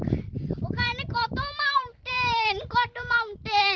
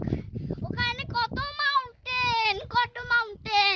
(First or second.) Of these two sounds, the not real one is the first